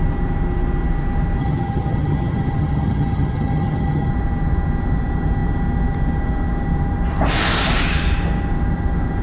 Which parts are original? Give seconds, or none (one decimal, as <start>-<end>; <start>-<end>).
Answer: 0.0-1.4; 4.1-9.2